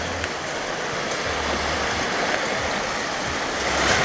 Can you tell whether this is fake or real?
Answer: real